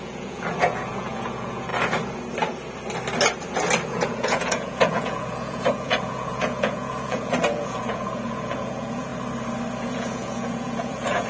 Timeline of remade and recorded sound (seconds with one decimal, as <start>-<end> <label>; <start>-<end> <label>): 0.0-1.7 remade; 1.7-3.9 recorded; 3.9-9.1 remade; 9.1-9.8 recorded; 9.8-11.3 remade